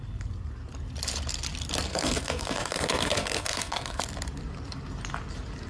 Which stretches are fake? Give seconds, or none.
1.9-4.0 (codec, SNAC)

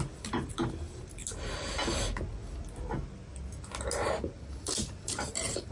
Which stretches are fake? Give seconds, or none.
0.0-1.2 (vocoder, BigVGAN v2); 4.6-5.7

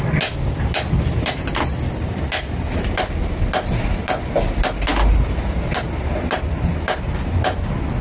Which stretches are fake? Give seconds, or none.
none